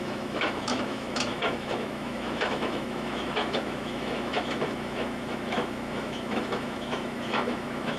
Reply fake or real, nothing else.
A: fake